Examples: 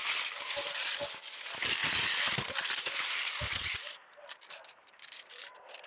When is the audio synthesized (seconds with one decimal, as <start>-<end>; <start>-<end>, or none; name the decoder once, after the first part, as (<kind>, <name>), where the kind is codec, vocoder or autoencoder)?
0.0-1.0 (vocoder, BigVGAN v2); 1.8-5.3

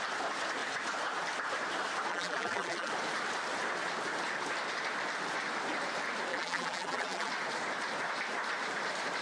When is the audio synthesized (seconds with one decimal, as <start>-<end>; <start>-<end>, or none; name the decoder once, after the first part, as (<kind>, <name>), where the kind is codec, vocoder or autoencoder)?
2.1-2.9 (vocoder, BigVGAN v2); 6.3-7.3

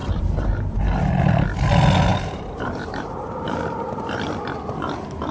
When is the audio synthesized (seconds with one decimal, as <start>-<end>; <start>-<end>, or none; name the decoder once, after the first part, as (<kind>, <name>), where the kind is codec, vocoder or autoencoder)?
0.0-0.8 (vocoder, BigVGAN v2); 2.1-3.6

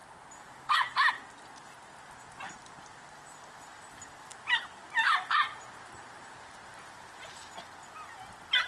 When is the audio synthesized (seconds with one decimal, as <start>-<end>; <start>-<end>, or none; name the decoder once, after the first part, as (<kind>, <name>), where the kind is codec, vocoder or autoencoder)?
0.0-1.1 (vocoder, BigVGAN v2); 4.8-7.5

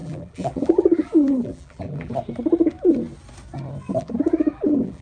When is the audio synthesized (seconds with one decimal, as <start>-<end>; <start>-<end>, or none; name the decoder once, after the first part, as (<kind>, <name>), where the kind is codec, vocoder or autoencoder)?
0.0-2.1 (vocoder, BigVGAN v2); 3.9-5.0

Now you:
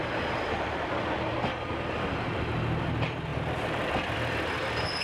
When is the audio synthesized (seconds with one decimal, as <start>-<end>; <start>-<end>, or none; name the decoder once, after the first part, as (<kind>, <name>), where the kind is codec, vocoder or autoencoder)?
3.3-3.9 (vocoder, BigVGAN v2)

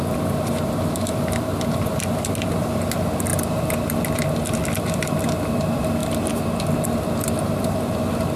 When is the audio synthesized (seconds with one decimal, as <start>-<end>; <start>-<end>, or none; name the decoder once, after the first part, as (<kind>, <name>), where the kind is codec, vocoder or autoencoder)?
0.0-6.0 (vocoder, BigVGAN v2); 6.6-8.4

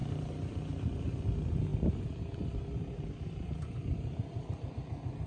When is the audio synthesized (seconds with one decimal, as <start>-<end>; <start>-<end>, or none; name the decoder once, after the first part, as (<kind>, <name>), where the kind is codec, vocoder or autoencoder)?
0.0-0.7 (vocoder, BigVGAN v2)